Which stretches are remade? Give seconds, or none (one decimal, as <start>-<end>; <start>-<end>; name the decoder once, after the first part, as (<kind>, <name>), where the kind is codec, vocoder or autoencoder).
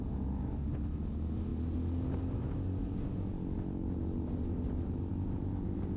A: none